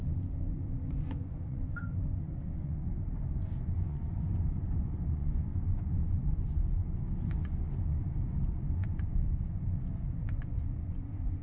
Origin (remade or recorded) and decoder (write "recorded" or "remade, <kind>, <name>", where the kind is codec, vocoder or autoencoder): remade, vocoder, Vocos